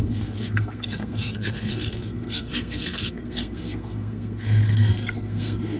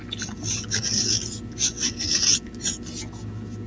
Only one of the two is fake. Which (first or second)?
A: first